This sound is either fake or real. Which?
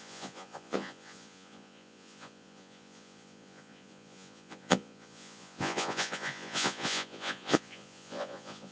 fake